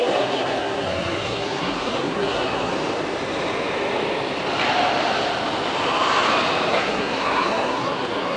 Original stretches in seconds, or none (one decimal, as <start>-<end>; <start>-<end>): 2.7-6.7

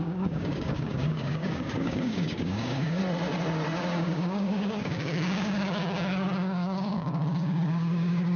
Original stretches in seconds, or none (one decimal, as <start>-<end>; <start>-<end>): 3.0-3.9